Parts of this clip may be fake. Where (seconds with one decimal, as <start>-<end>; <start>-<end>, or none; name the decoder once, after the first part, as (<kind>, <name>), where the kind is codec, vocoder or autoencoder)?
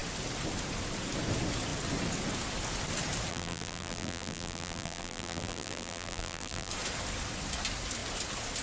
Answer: 3.3-6.7 (vocoder, BigVGAN v2)